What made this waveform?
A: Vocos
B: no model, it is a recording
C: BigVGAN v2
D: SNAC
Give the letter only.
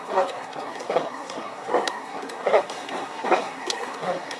D